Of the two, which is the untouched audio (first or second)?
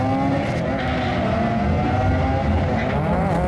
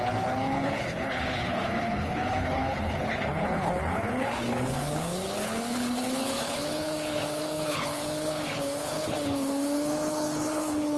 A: first